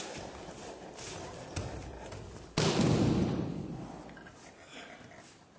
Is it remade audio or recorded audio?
recorded